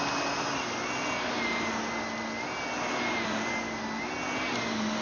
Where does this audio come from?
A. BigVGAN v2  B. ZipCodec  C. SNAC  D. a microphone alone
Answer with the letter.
D